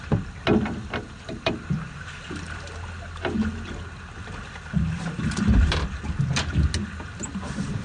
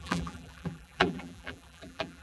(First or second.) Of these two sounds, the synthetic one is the second